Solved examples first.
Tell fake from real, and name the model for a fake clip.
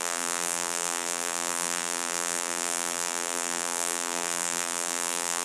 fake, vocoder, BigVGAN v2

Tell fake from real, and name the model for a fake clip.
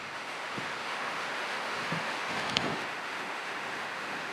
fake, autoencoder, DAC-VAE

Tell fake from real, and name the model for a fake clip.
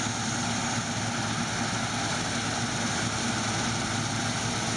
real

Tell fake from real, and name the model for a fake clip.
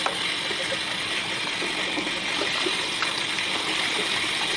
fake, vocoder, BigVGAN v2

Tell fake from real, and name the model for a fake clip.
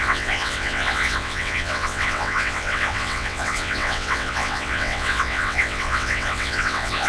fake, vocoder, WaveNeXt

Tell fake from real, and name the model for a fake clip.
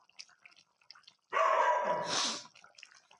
real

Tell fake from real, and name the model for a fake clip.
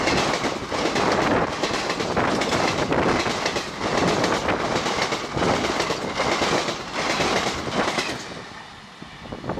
real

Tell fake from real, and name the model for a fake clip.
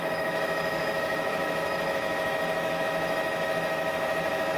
fake, autoencoder, DAC-VAE